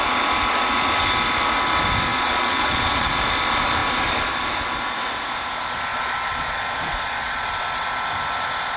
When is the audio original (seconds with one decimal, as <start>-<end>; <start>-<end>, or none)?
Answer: 0.0-2.1; 3.1-5.9; 7.4-8.8